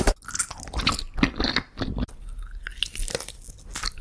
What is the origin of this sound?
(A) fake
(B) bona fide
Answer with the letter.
B